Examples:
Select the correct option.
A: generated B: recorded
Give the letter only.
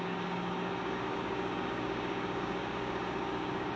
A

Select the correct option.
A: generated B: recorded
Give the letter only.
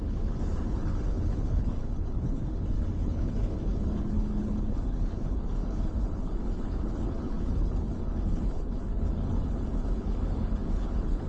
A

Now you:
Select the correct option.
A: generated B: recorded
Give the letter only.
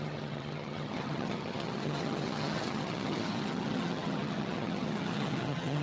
A